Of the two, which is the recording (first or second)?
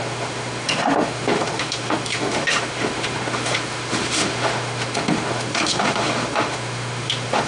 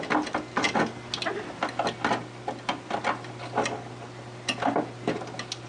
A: second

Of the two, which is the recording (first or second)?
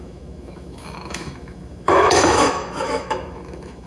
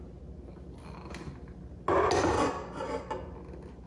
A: second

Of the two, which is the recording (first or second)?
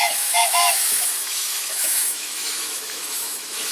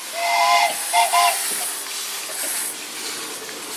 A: second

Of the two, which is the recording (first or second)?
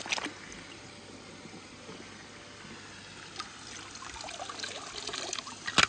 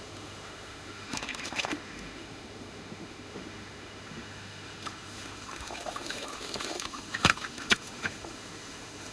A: first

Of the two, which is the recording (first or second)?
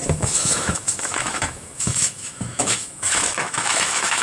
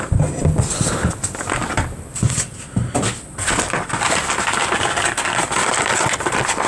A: second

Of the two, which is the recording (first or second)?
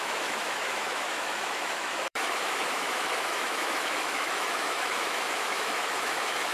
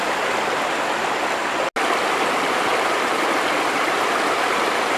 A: second